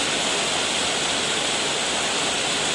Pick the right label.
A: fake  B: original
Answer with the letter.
B